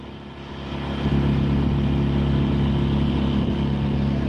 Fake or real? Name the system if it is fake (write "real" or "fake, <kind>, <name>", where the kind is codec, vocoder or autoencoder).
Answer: real